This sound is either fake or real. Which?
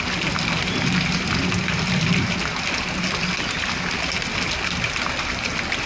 real